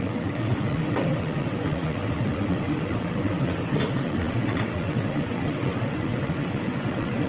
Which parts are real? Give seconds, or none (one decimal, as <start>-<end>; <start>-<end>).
none